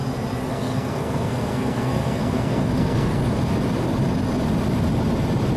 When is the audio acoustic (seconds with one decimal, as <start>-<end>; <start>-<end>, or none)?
0.0-0.5; 3.2-5.6